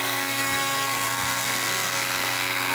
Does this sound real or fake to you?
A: fake